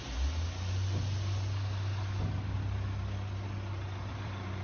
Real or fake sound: real